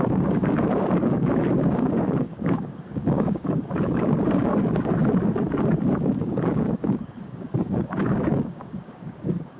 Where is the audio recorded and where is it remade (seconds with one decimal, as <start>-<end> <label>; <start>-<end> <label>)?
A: 0.0-5.0 remade; 5.0-6.2 recorded; 6.2-9.6 remade